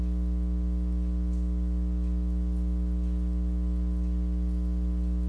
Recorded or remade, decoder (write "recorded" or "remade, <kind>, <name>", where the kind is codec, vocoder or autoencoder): recorded